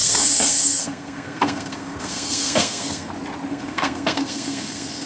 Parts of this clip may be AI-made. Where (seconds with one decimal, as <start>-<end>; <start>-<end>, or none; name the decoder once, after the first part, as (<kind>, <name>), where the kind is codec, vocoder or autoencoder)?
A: 0.0-3.1 (codec, SNAC); 3.5-5.1